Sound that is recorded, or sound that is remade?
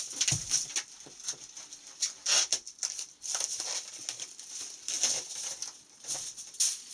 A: recorded